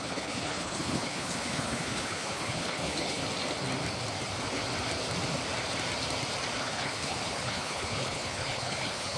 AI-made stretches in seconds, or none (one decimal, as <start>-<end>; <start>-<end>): 0.0-3.2; 6.6-9.2